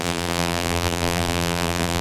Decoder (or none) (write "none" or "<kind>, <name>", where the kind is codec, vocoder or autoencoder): vocoder, BigVGAN v2